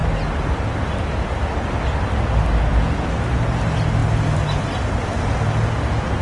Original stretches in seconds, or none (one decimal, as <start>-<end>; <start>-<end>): 0.0-6.2